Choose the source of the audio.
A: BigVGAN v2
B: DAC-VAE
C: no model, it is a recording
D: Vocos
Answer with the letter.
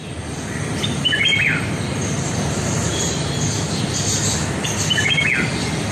A